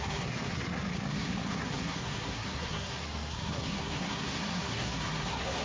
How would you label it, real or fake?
fake